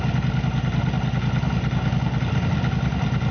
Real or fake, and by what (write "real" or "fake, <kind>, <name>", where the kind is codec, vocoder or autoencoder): real